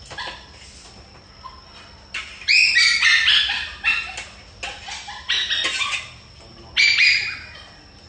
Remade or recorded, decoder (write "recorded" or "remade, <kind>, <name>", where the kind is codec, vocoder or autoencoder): recorded